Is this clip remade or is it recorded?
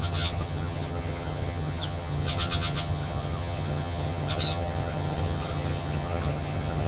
remade